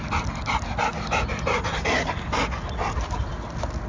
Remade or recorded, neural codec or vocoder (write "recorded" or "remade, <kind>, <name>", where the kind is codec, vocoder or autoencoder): recorded